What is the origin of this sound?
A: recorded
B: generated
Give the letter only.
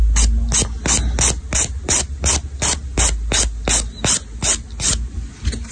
A